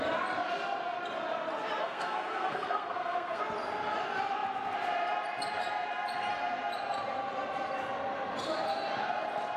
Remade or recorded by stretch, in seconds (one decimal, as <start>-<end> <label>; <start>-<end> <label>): 0.0-1.8 recorded; 1.8-3.4 remade; 3.4-9.6 recorded